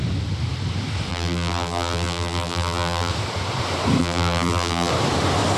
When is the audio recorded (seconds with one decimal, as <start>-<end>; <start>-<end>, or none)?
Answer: 0.0-1.1; 3.1-4.0; 4.9-5.6